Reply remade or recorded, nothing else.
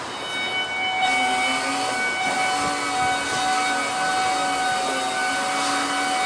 recorded